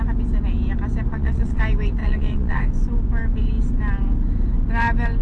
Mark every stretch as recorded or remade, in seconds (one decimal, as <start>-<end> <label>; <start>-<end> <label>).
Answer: 0.0-1.1 recorded; 1.1-1.6 remade; 1.6-2.0 recorded; 2.0-2.6 remade; 2.6-5.2 recorded